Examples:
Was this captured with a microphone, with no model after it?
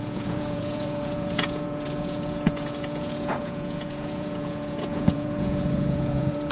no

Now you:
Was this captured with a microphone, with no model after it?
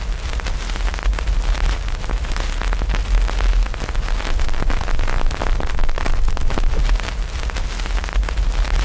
yes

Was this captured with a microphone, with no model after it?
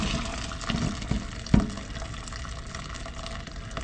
yes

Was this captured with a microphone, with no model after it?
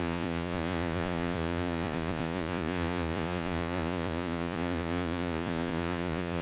no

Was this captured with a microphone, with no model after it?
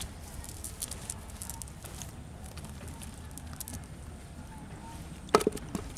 yes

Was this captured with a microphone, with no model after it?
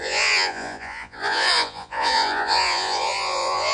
no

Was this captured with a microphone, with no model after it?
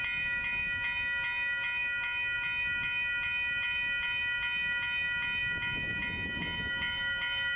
yes